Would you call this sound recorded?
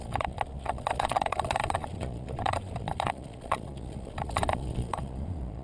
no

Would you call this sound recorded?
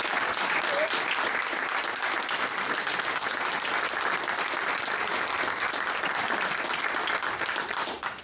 yes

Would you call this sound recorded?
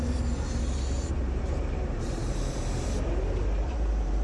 no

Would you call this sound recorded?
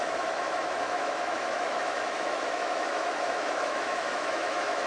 no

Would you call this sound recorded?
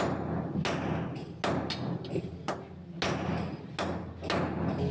yes